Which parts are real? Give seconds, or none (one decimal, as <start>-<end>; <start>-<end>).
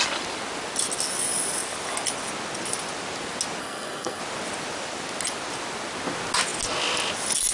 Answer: 0.0-3.6; 4.2-7.5